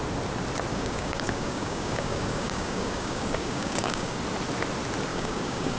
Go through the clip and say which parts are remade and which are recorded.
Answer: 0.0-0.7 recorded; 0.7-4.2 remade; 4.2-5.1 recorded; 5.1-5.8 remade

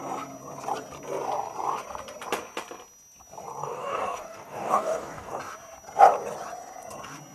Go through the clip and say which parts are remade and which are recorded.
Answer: 0.0-3.6 recorded; 3.6-5.4 remade; 5.4-7.3 recorded

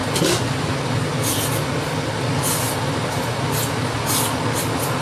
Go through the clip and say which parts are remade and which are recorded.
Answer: 0.0-5.0 recorded

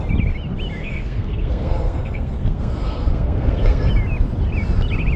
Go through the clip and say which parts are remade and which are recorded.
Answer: 0.0-0.8 recorded; 0.8-3.9 remade; 3.9-5.2 recorded

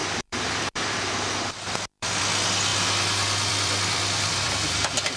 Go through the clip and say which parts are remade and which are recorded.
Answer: 0.0-2.2 remade; 2.2-2.7 recorded; 2.7-4.8 remade; 4.8-5.2 recorded

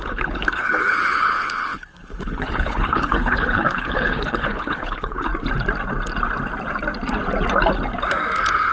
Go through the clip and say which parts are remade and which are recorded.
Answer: 0.0-5.3 remade; 5.3-8.7 recorded

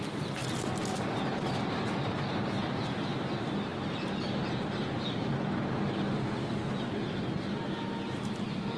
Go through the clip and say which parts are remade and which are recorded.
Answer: 0.0-8.8 recorded